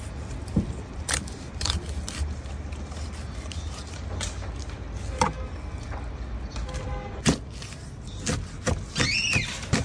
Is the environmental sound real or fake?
real